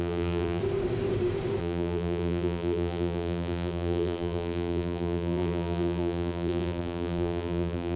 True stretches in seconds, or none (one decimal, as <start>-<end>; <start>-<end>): 0.6-1.6

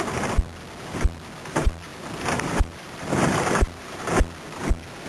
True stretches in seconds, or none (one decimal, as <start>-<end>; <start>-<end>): 0.0-1.9; 4.0-5.1

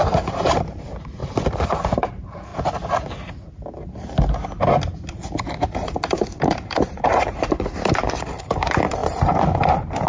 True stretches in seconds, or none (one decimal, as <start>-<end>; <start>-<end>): 2.5-5.4

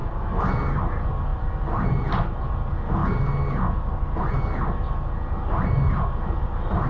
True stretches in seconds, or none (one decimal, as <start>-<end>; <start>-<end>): 0.5-1.3; 2.0-6.9

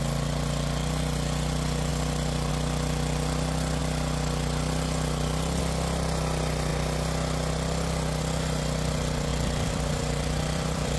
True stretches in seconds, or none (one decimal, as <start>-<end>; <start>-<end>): 0.0-9.3